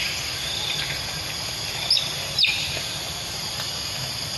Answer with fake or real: real